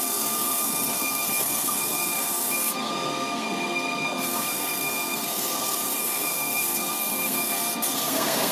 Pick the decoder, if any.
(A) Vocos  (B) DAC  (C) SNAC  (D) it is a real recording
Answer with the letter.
C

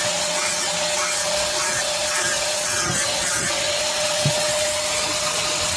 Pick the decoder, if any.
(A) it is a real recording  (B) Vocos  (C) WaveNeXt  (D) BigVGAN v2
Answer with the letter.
C